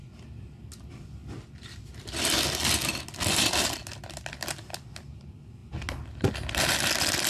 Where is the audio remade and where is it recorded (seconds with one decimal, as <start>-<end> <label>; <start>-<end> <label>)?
0.0-7.3 recorded